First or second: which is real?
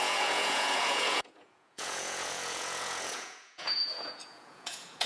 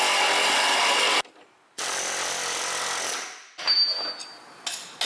second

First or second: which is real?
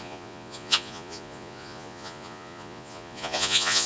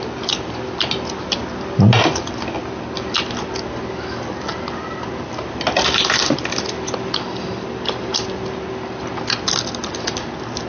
second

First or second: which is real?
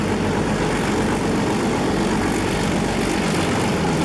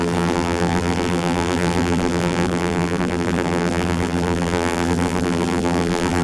first